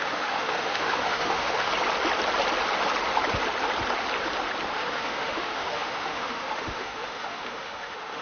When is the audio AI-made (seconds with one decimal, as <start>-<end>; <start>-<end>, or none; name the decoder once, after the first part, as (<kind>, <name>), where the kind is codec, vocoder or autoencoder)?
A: 0.0-1.7 (autoencoder, DAC-VAE); 4.7-8.2